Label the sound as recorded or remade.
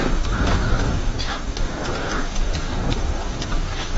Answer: remade